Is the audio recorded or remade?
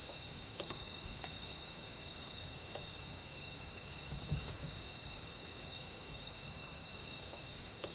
remade